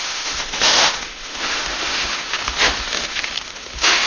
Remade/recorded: remade